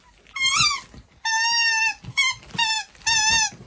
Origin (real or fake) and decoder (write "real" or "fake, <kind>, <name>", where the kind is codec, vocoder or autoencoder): real